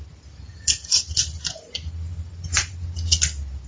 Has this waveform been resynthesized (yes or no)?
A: yes